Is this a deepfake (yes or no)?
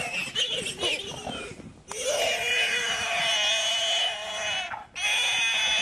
no